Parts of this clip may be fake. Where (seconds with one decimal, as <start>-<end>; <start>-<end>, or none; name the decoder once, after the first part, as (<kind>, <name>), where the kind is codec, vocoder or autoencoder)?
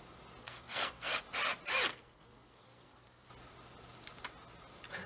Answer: 0.4-1.2 (codec, SNAC); 1.9-3.3